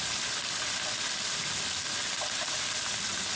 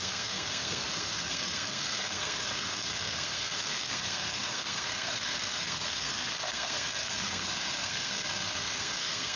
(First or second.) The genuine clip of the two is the first